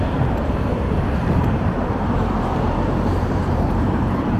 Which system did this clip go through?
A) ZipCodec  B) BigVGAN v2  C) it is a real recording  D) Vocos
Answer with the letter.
B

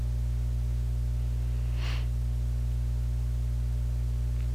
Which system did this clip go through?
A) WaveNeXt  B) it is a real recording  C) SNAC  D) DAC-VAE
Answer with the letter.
B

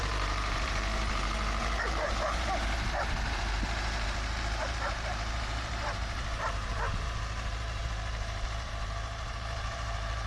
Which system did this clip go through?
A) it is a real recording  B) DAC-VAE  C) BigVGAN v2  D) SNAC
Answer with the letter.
C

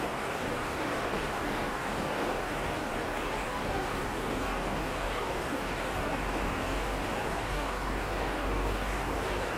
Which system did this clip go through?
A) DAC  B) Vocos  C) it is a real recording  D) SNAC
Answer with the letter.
A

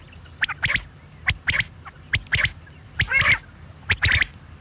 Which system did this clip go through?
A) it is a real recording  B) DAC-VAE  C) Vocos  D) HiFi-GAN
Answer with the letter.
A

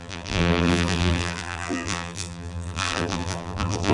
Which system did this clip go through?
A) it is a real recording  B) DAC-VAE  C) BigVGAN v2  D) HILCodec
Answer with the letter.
C